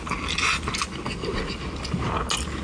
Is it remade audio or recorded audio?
recorded